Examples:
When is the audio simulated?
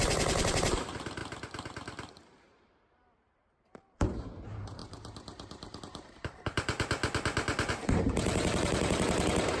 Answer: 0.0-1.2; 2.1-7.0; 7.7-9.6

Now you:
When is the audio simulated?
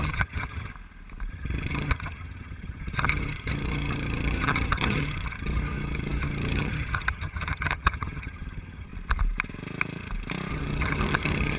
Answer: 0.0-0.7; 1.3-8.9; 10.5-11.6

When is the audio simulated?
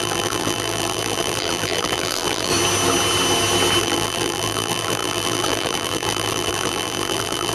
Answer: 0.0-2.5; 3.8-7.5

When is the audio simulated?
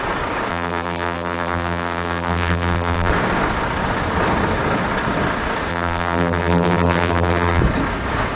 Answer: 0.5-3.1; 5.7-7.6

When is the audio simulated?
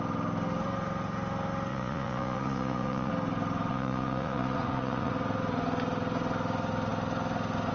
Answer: 1.7-3.1; 3.7-5.1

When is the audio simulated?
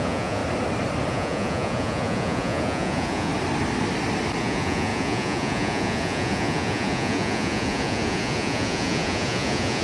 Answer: 0.0-0.4; 1.1-3.3; 4.4-9.8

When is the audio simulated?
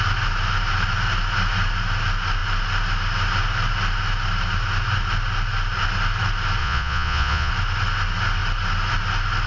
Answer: 6.6-7.5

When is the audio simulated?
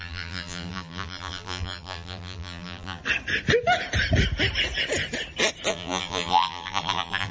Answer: 0.0-3.0; 5.7-7.3